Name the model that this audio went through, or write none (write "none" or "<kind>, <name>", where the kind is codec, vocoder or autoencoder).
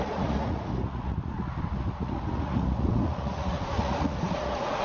vocoder, Vocos